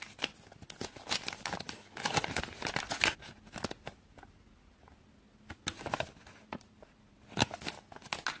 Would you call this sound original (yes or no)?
yes